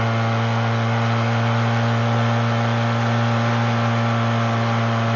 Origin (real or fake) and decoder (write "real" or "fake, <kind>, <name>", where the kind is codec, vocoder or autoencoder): real